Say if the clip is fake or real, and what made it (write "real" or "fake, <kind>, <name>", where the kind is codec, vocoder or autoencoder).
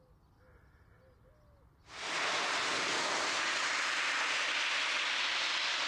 real